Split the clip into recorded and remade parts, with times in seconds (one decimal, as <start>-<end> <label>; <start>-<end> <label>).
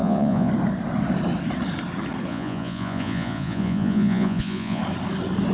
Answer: 0.0-0.5 remade; 0.5-2.3 recorded; 2.3-4.8 remade; 4.8-5.5 recorded